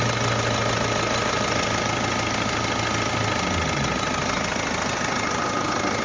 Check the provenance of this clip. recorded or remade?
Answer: recorded